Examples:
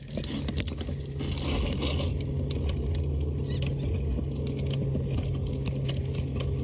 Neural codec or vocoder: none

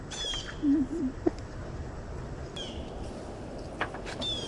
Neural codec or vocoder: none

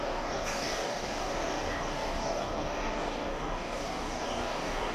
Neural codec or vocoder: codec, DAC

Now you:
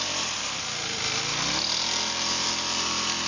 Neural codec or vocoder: none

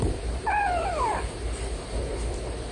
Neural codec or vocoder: vocoder, BigVGAN v2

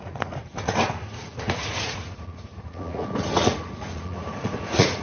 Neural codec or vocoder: vocoder, Vocos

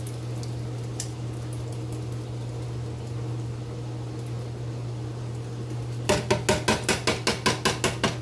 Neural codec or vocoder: none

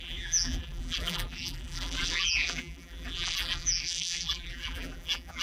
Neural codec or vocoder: vocoder, BigVGAN v2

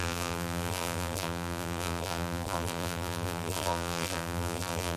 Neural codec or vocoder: vocoder, BigVGAN v2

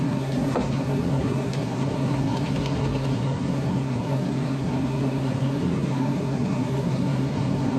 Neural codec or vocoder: codec, SNAC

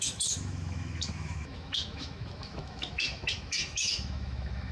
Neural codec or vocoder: autoencoder, DAC-VAE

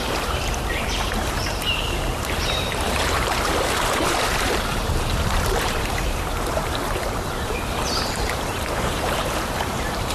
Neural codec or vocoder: vocoder, BigVGAN v2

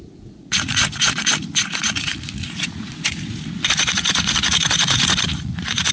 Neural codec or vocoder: vocoder, Vocos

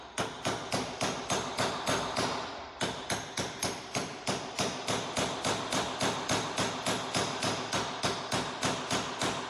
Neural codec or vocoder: none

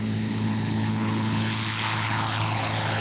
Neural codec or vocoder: codec, HILCodec